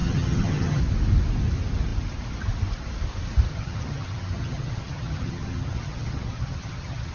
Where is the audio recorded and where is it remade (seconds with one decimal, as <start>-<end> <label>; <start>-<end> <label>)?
0.0-0.8 remade; 0.8-3.5 recorded; 3.5-7.1 remade